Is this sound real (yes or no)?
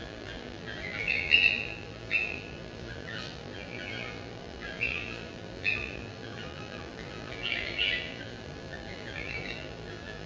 no